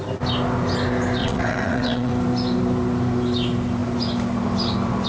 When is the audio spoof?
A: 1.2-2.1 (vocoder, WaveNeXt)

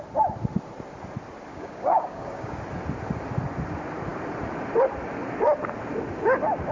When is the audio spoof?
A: 1.5-2.6 (codec, DAC)

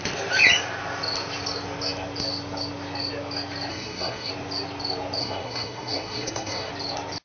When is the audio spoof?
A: 3.7-4.3 (codec, SNAC); 5.2-6.7

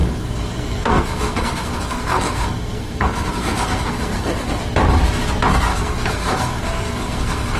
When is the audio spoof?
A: 0.0-4.6 (codec, SNAC); 5.7-7.6

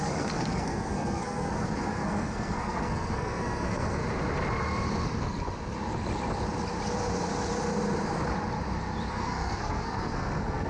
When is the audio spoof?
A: 0.0-4.0 (codec, SNAC); 9.1-10.7

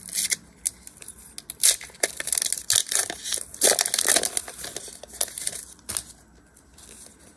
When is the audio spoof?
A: none

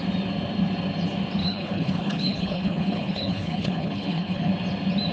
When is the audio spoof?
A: 1.4-4.5 (codec, HILCodec)